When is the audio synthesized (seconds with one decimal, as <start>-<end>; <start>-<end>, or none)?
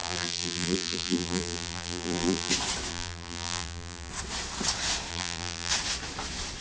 0.0-2.5; 2.9-4.1; 5.1-5.7